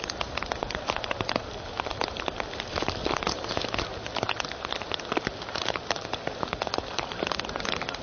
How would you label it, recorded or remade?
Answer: recorded